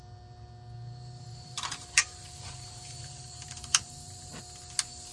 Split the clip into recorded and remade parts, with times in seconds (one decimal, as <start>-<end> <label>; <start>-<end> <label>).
0.0-1.3 recorded; 1.3-4.4 remade; 4.4-5.1 recorded